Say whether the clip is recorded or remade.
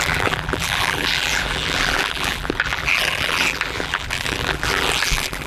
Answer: remade